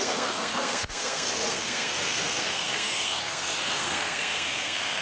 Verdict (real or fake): fake